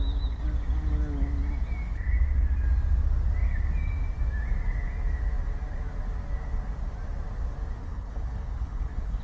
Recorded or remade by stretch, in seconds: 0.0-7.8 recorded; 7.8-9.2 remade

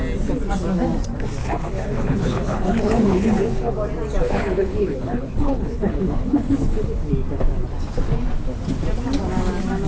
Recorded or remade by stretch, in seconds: 0.0-1.4 recorded; 1.4-3.7 remade; 3.7-4.2 recorded; 4.2-7.1 remade; 7.1-9.9 recorded

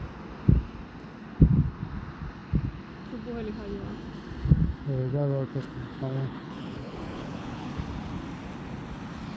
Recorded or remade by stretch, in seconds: 0.0-5.0 recorded; 5.0-7.8 remade; 7.8-9.4 recorded